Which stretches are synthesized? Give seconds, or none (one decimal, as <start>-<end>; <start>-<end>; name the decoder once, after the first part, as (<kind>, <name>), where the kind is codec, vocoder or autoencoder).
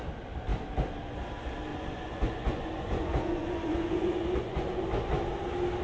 1.7-4.8 (vocoder, Vocos)